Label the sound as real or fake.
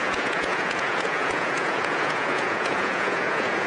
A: fake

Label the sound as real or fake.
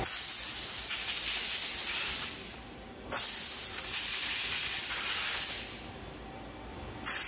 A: real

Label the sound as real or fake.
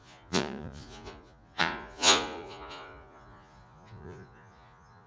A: fake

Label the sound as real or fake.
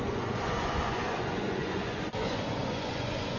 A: fake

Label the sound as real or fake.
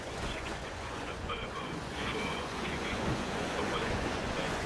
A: fake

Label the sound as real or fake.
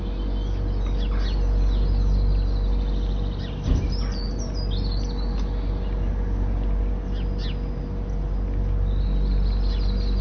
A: real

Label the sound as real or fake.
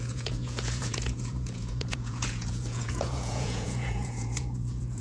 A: fake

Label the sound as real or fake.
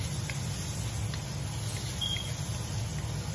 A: real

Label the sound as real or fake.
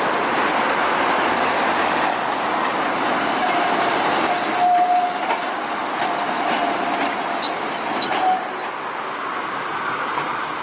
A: real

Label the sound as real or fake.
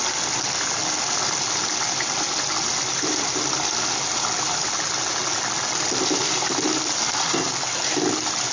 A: real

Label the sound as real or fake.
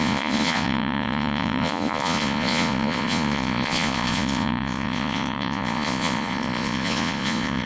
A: fake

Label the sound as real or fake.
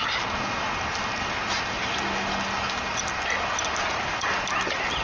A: real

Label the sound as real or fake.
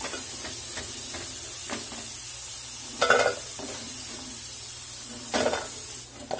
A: real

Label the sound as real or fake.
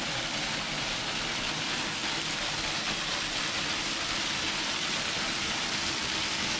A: real